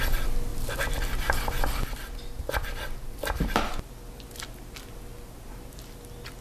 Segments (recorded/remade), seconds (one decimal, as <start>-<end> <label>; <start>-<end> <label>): 0.0-5.1 recorded; 5.1-5.8 remade; 5.8-6.4 recorded